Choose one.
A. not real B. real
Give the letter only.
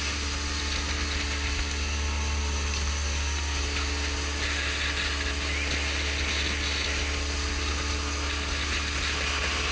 B